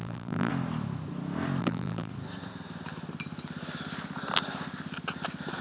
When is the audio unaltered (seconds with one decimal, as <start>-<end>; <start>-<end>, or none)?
0.5-1.6; 2.1-5.6